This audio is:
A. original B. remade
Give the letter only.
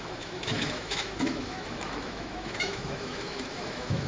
B